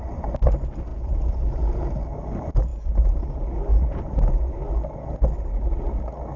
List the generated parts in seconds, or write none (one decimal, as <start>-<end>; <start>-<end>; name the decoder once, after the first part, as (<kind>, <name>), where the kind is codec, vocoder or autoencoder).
0.9-2.0 (vocoder, Vocos); 3.7-4.5